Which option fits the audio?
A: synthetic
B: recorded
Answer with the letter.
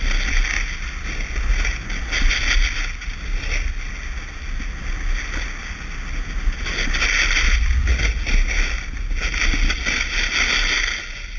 B